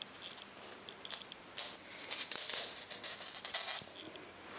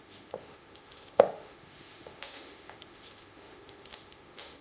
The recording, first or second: first